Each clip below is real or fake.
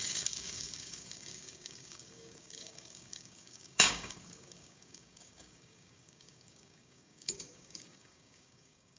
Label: fake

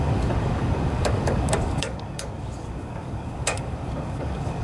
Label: fake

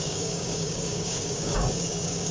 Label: fake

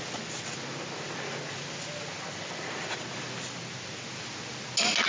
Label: real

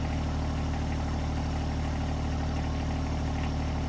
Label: real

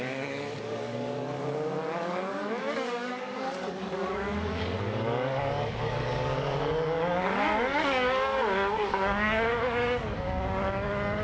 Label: fake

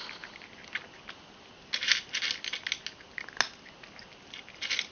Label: real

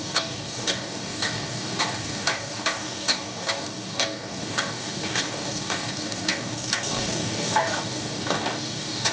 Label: fake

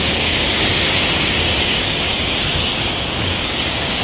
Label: fake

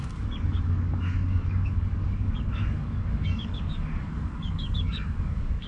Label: fake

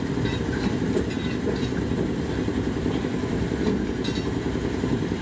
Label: real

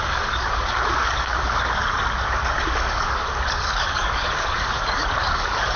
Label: fake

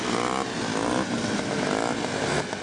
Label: real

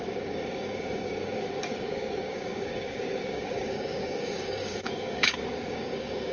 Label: fake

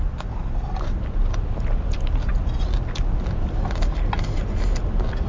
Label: real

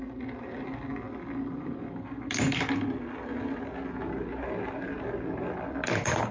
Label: real